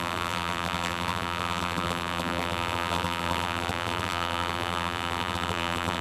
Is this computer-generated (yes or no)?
yes